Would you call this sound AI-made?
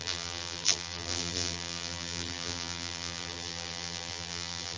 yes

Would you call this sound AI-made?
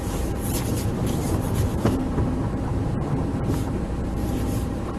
yes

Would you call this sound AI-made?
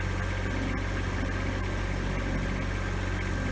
no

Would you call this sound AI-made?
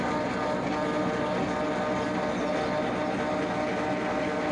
no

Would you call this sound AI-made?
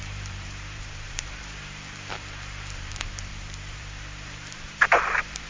yes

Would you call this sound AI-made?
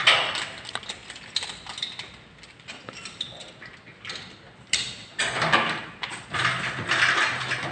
no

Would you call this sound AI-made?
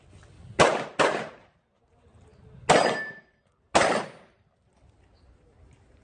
no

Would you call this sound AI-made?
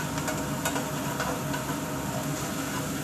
no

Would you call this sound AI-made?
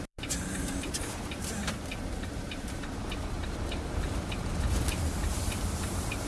yes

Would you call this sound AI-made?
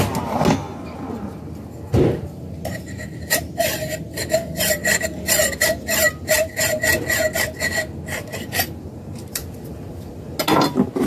no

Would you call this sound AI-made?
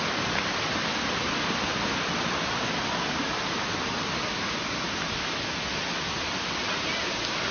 no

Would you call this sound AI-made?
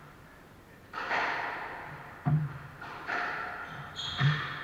yes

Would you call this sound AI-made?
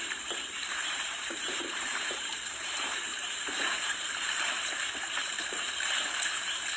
yes